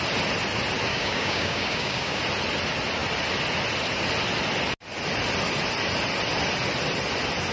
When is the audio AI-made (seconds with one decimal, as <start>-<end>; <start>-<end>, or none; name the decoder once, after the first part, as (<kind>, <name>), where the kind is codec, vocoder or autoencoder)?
0.9-2.2 (codec, DAC)